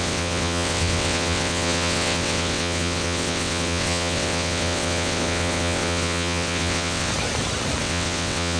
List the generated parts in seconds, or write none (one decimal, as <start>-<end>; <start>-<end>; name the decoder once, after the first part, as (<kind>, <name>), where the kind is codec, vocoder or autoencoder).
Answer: 0.0-7.1 (vocoder, WaveNeXt); 7.8-8.6